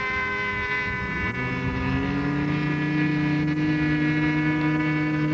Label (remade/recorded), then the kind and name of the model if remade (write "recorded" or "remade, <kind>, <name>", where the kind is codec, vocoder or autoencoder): recorded